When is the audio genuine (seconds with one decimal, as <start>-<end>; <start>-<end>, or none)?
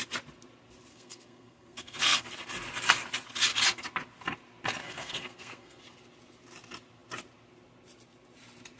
0.0-0.9; 2.3-4.8; 5.8-8.8